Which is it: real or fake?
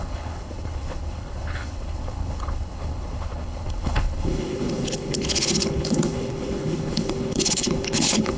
fake